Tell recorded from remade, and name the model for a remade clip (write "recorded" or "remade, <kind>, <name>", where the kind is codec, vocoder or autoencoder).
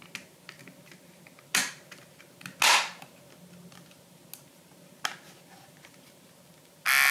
recorded